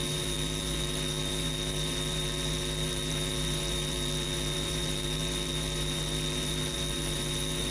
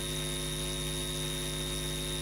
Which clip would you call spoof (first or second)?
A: first